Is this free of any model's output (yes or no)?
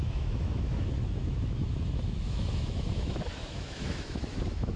no